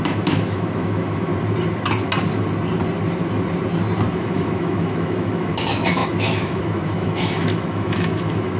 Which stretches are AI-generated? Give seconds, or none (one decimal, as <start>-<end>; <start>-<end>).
0.0-1.3; 4.1-8.6